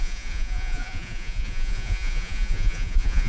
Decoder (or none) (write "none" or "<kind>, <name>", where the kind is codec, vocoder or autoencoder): vocoder, Vocos